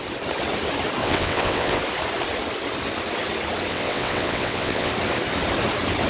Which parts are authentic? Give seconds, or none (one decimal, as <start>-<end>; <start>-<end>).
0.0-1.0; 1.8-3.7; 4.9-6.1